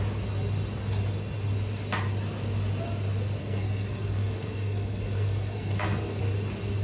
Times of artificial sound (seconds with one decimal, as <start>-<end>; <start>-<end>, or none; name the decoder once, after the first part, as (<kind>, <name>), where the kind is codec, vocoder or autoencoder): 3.4-6.2 (codec, SNAC)